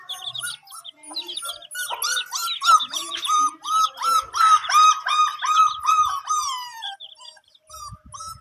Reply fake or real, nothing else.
real